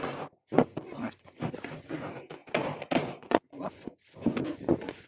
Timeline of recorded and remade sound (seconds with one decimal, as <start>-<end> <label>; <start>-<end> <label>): 0.0-2.4 remade; 2.4-3.0 recorded; 3.0-5.1 remade